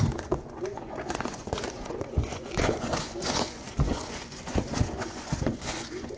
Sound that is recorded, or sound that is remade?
remade